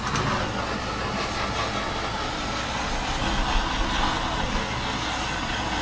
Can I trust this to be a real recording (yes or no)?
yes